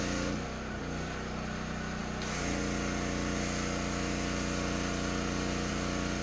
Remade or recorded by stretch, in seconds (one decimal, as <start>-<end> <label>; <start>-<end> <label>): 0.0-6.2 recorded